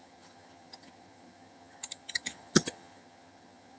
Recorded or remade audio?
remade